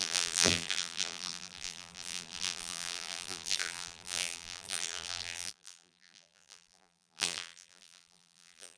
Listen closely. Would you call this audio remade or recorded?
remade